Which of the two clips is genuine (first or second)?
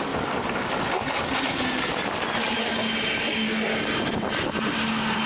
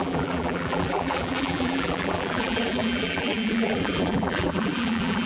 first